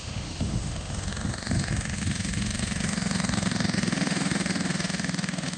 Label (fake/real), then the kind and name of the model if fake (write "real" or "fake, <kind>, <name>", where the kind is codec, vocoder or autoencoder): fake, autoencoder, DAC-VAE